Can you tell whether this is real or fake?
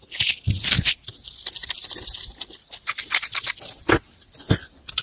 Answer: real